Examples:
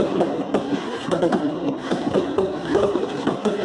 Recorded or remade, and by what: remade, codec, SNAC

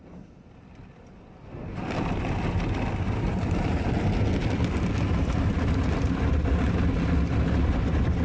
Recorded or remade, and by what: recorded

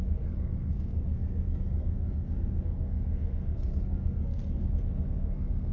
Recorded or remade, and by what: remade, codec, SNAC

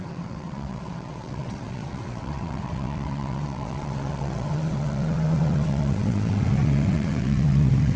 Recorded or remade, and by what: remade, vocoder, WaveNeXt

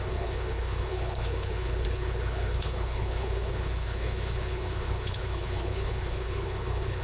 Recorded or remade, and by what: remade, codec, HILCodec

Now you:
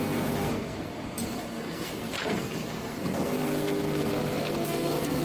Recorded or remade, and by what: remade, codec, SNAC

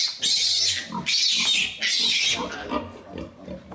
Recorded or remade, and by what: recorded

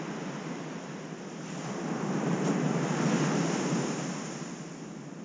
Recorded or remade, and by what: recorded